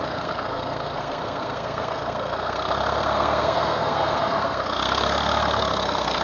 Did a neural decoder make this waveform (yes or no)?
yes